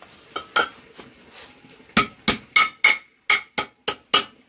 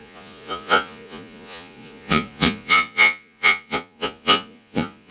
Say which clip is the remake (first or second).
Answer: second